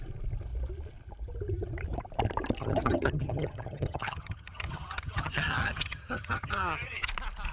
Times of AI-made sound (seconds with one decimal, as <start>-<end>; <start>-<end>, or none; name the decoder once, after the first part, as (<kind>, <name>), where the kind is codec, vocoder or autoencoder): 2.6-7.1 (vocoder, HiFi-GAN)